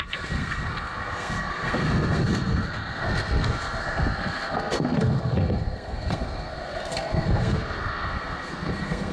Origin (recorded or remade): remade